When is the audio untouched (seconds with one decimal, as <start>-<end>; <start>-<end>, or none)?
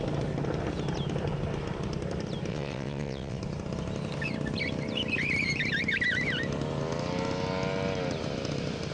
0.0-2.5; 3.4-8.9